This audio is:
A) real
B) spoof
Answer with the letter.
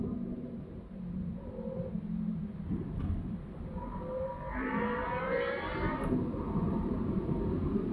B